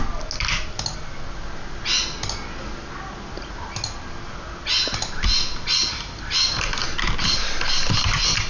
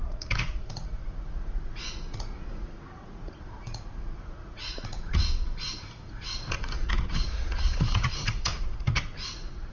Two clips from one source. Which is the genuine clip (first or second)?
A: first